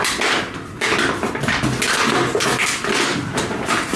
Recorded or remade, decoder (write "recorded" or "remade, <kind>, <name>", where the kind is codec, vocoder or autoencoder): recorded